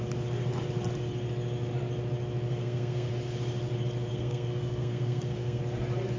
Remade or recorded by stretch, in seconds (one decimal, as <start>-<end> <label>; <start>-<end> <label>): 0.0-2.5 recorded; 2.5-3.1 remade; 3.1-4.1 recorded; 4.1-5.6 remade; 5.6-6.2 recorded